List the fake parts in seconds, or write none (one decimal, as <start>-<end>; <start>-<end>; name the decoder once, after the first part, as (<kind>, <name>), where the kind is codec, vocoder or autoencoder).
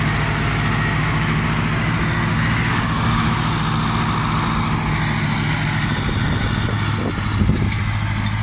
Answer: 2.3-3.4 (codec, DAC)